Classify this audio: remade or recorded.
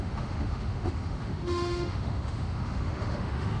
remade